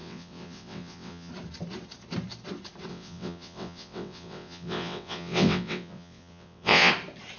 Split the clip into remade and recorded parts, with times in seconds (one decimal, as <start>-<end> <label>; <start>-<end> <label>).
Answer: 0.0-1.3 remade; 1.3-2.9 recorded; 2.9-6.9 remade; 6.9-7.4 recorded